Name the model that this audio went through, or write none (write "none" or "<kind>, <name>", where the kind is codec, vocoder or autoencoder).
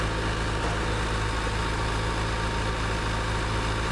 none